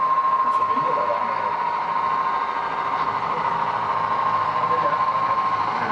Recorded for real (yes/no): no